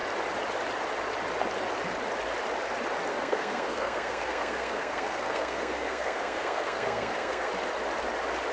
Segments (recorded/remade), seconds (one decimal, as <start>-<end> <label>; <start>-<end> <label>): 0.0-3.1 recorded; 3.1-7.5 remade; 7.5-8.5 recorded